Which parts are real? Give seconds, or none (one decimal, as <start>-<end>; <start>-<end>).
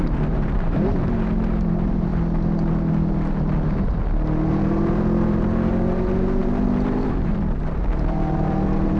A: 2.1-4.5